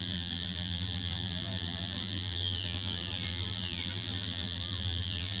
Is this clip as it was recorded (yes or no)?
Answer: no